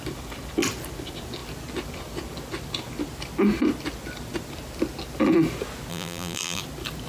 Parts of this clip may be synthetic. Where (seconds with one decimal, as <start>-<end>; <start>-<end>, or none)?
5.9-6.6